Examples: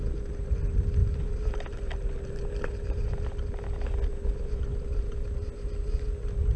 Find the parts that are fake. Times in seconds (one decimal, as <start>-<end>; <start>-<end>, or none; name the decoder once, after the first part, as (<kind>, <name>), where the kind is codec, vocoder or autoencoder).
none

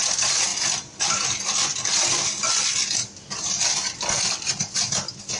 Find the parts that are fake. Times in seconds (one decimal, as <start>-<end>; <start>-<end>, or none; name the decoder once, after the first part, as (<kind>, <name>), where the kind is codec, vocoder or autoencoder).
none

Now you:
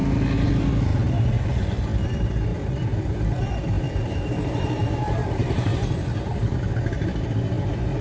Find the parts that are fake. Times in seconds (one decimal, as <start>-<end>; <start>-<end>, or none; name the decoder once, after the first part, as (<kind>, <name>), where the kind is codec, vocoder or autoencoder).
2.5-6.7 (vocoder, BigVGAN v2)

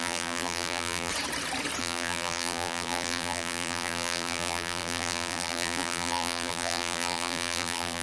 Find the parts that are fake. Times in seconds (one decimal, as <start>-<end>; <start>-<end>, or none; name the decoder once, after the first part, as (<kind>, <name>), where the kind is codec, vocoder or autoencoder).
0.0-1.1 (vocoder, BigVGAN v2); 1.8-8.0

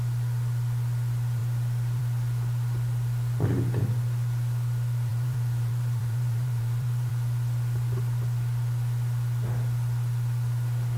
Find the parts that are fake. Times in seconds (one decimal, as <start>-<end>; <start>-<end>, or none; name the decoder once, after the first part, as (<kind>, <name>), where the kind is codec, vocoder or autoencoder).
5.1-7.1 (vocoder, BigVGAN v2)